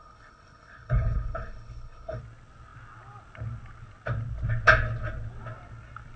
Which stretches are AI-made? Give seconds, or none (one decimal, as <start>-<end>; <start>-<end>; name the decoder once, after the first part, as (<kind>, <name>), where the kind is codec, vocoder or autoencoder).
0.0-2.2 (codec, HILCodec)